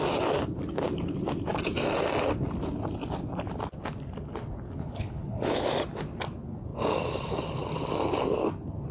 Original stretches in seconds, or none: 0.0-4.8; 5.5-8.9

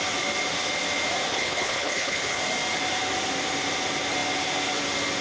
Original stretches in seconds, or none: 0.0-1.3; 2.4-5.2

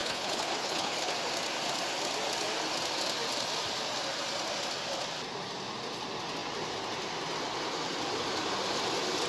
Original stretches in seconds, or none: 1.1-9.3

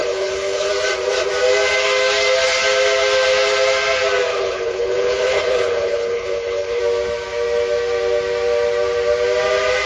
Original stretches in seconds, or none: 0.7-4.3; 6.8-9.9